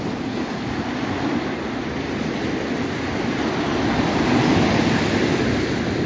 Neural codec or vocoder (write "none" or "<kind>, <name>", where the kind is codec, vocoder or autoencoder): none